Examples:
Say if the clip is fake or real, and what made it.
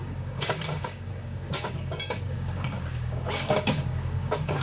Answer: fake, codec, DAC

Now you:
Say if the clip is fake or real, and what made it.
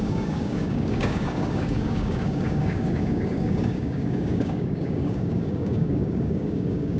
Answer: fake, codec, DAC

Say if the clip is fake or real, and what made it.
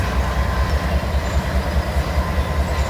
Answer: real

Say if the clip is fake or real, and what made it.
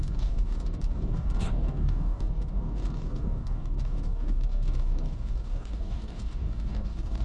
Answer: fake, codec, DAC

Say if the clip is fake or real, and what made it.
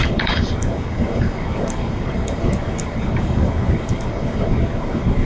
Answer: fake, codec, DAC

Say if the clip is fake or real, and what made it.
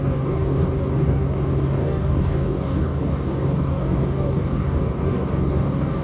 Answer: fake, codec, DAC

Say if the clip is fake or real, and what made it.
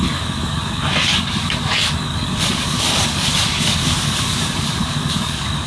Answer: fake, codec, DAC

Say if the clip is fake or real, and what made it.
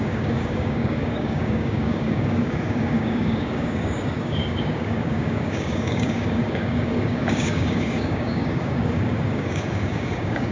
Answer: fake, codec, DAC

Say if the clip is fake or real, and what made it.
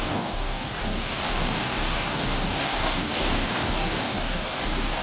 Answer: fake, codec, DAC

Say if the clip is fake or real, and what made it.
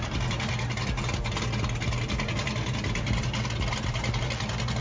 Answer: real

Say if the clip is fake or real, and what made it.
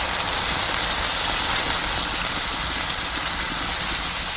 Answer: real